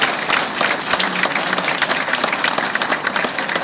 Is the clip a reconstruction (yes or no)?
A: no